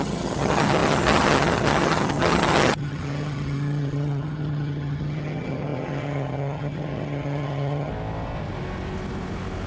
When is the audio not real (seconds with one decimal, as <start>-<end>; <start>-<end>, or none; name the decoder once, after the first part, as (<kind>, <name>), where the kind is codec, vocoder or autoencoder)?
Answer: 0.0-7.9 (vocoder, HiFi-GAN)